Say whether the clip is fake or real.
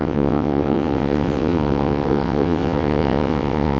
fake